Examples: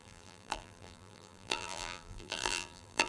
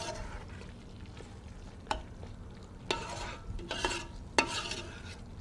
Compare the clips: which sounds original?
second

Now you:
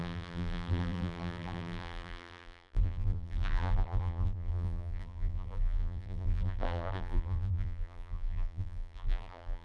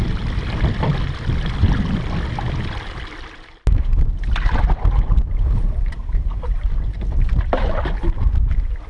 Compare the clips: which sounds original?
second